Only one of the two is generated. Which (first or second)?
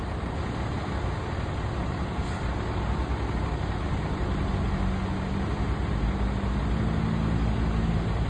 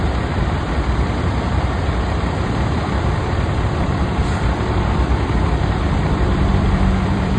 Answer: second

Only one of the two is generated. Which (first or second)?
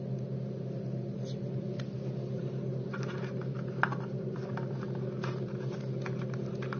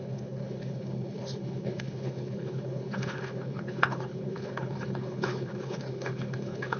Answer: second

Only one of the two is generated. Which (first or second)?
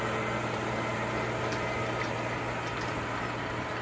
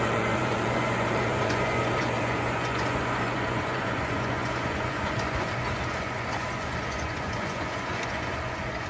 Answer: second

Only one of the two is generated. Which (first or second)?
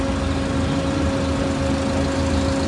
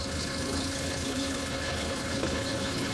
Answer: second